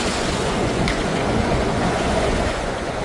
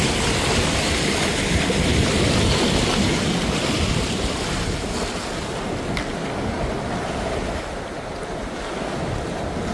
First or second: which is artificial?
first